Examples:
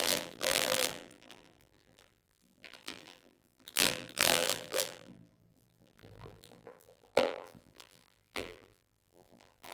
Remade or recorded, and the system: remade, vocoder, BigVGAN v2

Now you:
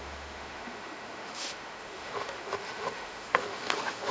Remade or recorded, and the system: remade, autoencoder, DAC-VAE